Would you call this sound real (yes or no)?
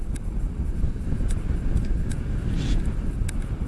yes